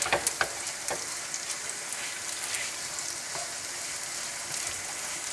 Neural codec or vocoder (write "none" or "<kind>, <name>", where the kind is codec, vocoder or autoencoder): none